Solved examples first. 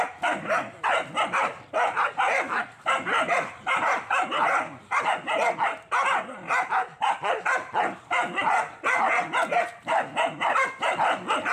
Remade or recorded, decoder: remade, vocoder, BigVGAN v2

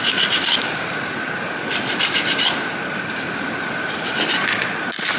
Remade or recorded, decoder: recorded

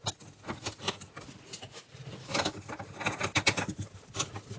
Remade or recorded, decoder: recorded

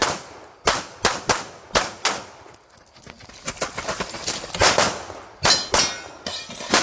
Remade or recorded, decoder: recorded